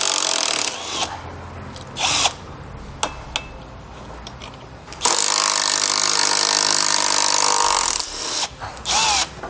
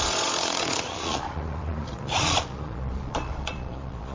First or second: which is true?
first